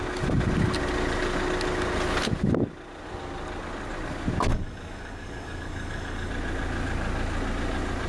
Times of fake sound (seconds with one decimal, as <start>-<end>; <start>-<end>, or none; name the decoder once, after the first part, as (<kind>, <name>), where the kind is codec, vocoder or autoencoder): 4.5-6.3 (codec, DAC)